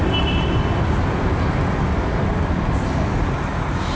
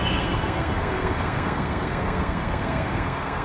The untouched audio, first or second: first